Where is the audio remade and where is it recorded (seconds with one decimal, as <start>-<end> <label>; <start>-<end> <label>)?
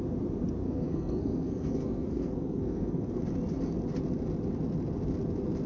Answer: 0.0-0.6 recorded; 0.6-3.2 remade; 3.2-5.7 recorded